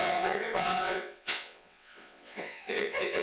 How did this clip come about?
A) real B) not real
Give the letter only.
B